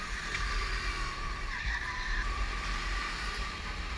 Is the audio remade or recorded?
remade